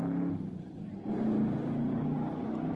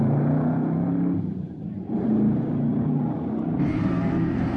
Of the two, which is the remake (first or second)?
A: second